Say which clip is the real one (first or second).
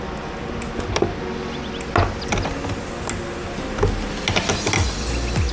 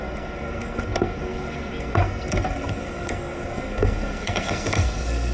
first